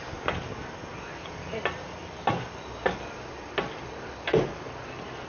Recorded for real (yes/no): yes